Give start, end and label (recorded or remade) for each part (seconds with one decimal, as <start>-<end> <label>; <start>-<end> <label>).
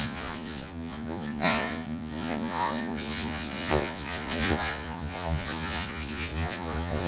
0.0-7.1 remade